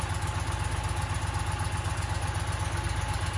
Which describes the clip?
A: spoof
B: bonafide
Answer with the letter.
B